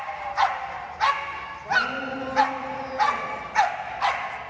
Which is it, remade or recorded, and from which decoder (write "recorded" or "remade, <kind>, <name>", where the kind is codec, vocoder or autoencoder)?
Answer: recorded